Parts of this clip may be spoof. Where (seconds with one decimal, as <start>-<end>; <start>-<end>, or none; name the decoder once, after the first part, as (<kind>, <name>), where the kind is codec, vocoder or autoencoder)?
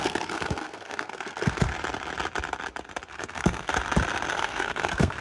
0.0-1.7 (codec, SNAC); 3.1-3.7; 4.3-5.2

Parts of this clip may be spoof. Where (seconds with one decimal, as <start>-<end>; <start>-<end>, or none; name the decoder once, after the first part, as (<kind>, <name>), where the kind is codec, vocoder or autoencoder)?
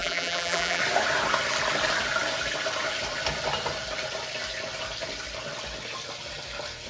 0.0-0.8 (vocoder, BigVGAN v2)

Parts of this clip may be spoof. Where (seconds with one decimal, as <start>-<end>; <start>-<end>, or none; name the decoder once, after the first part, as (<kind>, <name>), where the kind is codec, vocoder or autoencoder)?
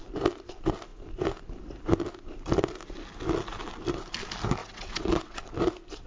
4.6-5.4 (vocoder, WaveNeXt)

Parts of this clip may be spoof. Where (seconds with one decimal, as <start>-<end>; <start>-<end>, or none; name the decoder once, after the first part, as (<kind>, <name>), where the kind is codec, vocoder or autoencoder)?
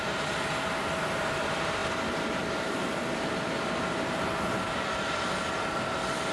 none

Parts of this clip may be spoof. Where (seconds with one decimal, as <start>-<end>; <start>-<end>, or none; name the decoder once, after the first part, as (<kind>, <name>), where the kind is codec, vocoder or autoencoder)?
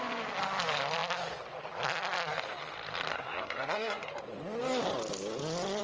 3.1-4.1 (codec, SNAC)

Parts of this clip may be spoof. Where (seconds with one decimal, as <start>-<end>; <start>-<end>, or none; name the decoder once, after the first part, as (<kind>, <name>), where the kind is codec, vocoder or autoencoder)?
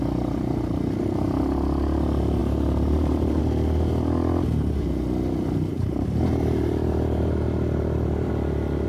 2.4-3.4 (vocoder, BigVGAN v2); 5.7-8.3